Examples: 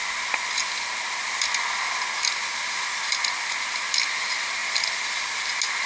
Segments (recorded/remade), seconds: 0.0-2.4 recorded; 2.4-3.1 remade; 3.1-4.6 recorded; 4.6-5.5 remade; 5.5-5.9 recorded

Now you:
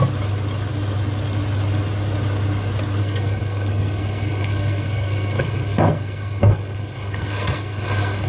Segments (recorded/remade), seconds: 0.0-3.0 recorded; 3.0-8.3 remade

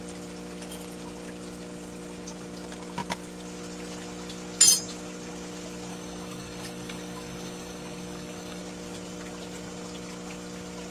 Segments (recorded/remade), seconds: 0.0-5.9 recorded; 5.9-8.6 remade; 8.6-10.9 recorded

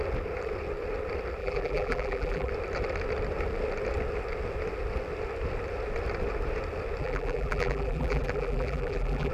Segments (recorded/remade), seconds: 0.0-1.4 recorded; 1.4-2.5 remade; 2.5-7.0 recorded; 7.0-9.3 remade